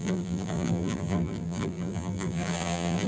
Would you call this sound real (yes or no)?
no